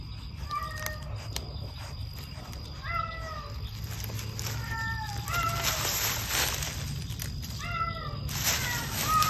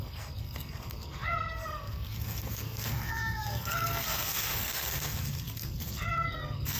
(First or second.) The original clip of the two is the first